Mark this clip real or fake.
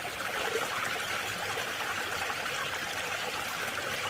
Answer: real